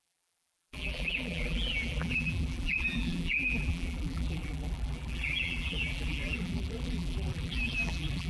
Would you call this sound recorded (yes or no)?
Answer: no